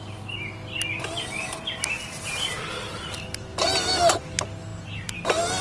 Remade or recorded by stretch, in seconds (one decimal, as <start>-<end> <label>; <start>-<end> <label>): 0.0-5.6 recorded